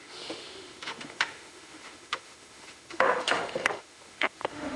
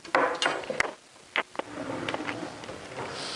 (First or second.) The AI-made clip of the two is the first